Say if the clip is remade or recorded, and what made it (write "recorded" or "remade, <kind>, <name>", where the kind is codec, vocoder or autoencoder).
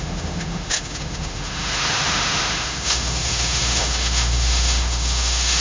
remade, autoencoder, DAC-VAE